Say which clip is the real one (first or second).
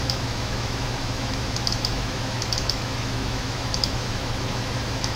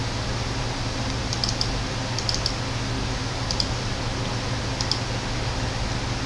second